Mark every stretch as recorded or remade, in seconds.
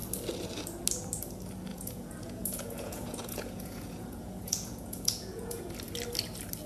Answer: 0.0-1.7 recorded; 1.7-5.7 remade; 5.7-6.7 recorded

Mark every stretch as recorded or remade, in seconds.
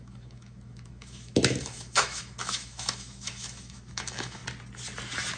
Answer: 0.0-4.4 remade; 4.4-5.4 recorded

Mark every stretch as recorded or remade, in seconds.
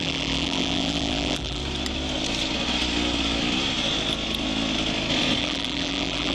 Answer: 0.0-1.6 remade; 1.6-5.4 recorded; 5.4-6.3 remade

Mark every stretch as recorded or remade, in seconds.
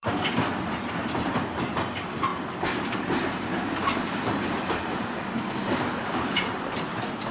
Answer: 0.0-7.3 remade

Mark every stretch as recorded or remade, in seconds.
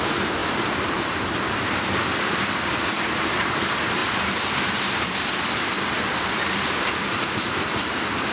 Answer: 0.0-8.3 remade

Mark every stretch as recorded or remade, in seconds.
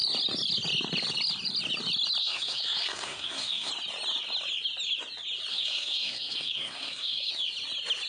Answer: 0.0-2.2 recorded; 2.2-3.7 remade; 3.7-5.5 recorded; 5.5-7.3 remade; 7.3-8.1 recorded